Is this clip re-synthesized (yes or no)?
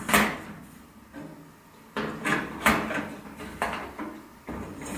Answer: no